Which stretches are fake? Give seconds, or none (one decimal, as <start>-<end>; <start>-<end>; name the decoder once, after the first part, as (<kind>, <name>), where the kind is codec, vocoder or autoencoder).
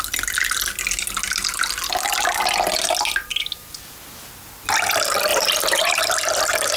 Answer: 5.3-6.0 (vocoder, BigVGAN v2)